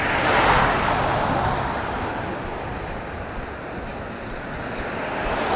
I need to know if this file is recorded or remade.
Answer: recorded